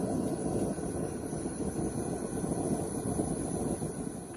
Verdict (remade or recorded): recorded